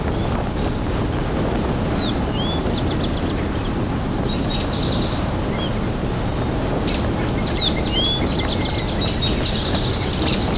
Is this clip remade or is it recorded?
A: recorded